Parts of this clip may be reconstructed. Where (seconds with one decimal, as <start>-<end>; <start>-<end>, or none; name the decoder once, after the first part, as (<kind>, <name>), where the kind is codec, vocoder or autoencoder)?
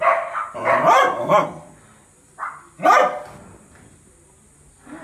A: none